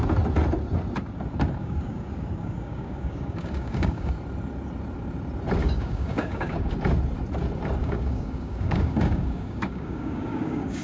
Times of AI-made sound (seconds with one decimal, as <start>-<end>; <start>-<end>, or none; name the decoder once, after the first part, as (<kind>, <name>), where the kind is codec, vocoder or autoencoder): 1.6-4.1 (codec, DAC); 5.6-6.7; 7.8-10.8